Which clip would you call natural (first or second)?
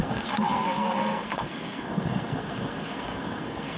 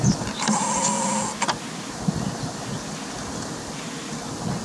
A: second